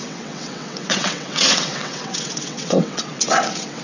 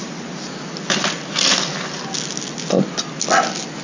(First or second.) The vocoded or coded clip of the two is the first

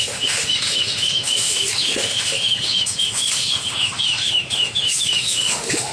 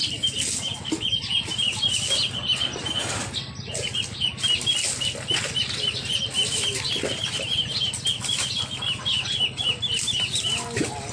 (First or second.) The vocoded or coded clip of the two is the first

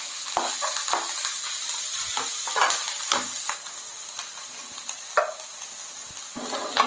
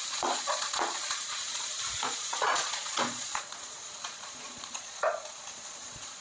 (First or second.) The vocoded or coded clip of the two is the second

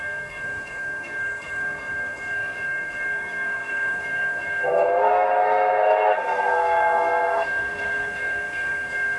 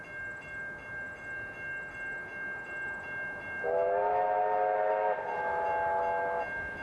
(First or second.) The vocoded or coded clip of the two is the first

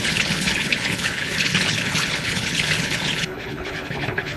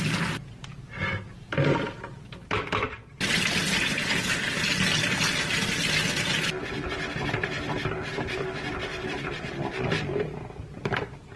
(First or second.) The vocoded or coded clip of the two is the first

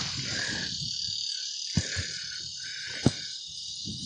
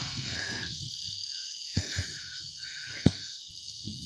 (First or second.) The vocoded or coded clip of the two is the second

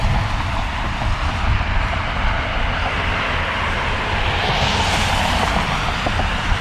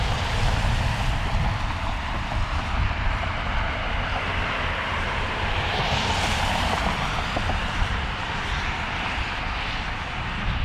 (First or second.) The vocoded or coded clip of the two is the second